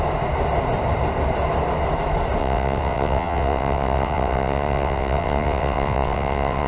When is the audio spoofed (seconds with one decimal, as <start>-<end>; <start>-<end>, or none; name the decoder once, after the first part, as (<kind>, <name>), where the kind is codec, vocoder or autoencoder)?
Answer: 2.4-6.7 (vocoder, WaveNeXt)